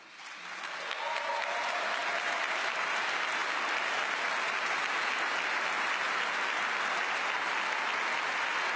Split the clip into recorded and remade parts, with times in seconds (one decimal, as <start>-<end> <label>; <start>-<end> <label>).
0.0-8.8 recorded